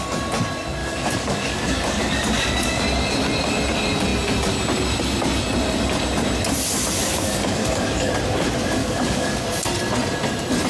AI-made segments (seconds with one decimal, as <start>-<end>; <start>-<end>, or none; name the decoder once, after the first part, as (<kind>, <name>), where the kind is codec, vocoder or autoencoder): 0.8-2.8 (codec, DAC); 7.1-8.1; 8.8-9.4